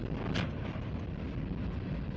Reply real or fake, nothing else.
real